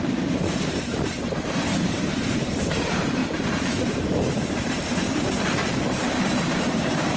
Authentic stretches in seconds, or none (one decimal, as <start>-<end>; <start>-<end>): none